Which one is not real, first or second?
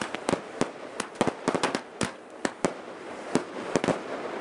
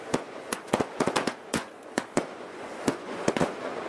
second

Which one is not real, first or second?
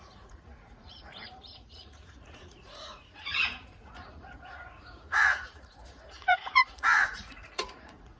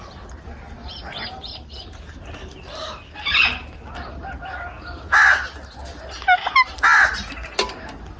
first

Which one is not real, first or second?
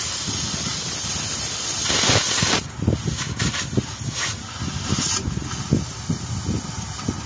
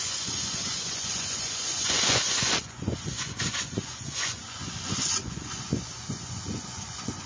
second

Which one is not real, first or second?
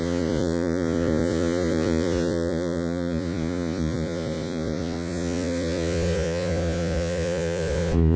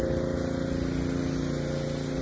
first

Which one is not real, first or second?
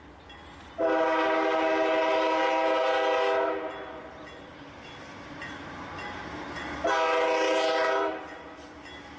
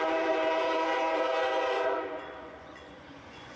second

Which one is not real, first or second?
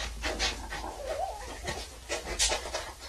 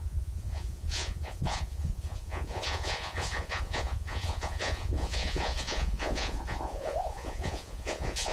second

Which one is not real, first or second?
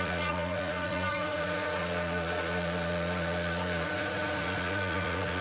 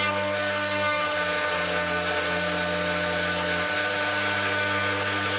first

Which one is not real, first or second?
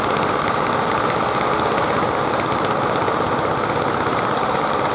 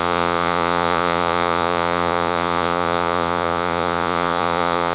second